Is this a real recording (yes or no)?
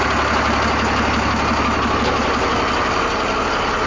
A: yes